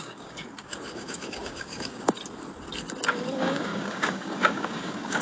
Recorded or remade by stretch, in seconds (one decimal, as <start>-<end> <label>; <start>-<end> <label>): 0.0-2.2 remade; 2.2-3.3 recorded; 3.3-5.2 remade